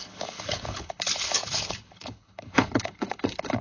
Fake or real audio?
fake